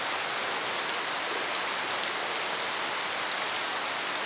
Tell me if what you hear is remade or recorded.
recorded